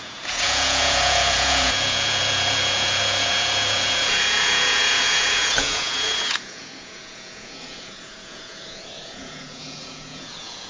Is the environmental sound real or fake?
fake